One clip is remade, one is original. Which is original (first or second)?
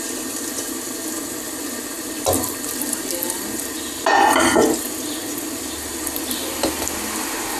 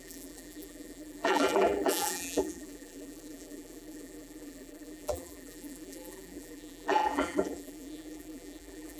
first